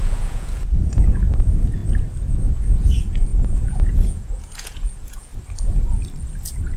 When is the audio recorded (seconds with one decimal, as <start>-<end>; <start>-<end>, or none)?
1.8-2.3; 5.3-6.8